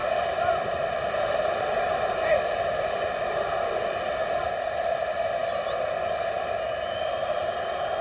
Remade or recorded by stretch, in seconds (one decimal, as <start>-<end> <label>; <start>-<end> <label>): 0.0-8.0 recorded